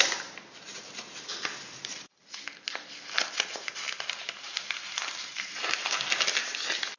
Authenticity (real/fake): real